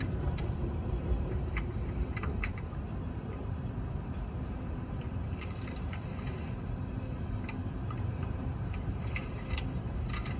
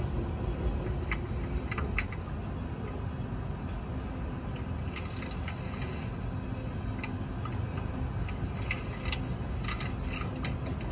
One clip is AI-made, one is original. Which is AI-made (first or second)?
first